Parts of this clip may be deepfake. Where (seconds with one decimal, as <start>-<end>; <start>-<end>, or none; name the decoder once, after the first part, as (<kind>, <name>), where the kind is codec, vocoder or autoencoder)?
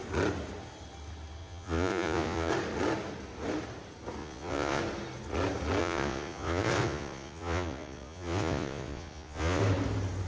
1.4-2.5 (vocoder, Vocos); 4.2-4.8; 5.8-9.6